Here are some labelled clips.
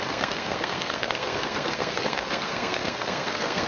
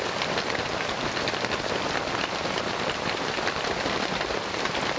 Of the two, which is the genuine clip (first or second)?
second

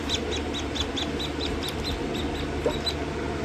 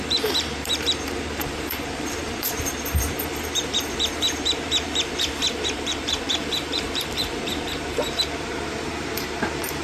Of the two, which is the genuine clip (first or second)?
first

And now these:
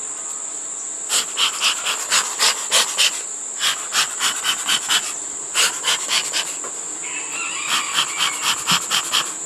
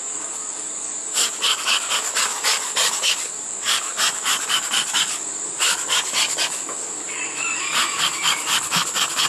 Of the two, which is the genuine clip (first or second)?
first